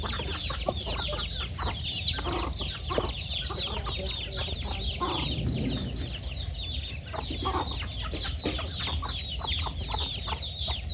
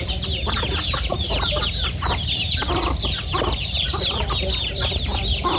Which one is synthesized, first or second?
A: second